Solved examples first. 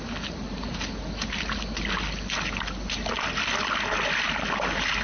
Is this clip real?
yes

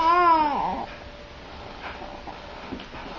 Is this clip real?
yes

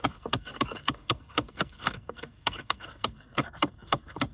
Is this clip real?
no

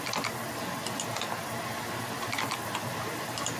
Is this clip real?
yes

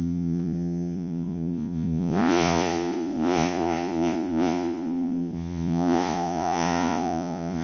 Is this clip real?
no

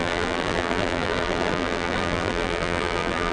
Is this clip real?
no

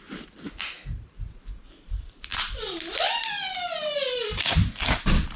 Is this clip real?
yes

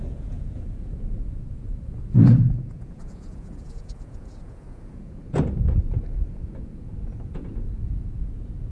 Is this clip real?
no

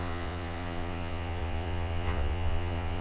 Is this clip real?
no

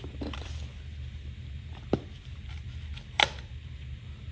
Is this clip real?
yes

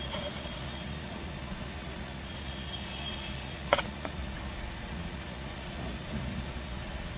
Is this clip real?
no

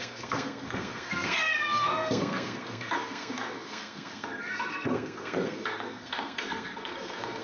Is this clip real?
no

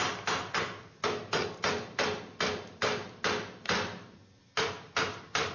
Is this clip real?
yes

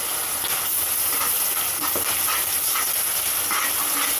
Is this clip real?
yes